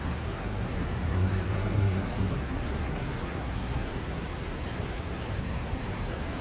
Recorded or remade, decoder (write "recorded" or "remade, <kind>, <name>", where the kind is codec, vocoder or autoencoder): remade, codec, SNAC